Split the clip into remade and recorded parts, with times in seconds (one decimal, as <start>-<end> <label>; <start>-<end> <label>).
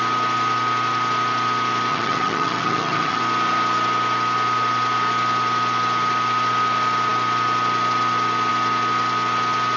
0.0-1.9 recorded; 1.9-3.2 remade; 3.2-9.8 recorded